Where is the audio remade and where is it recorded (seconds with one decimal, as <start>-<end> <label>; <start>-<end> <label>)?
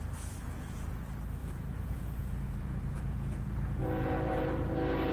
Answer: 0.0-0.4 recorded; 0.4-1.0 remade; 1.0-1.4 recorded; 1.4-4.5 remade; 4.5-5.1 recorded